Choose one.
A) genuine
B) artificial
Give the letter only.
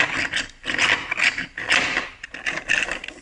A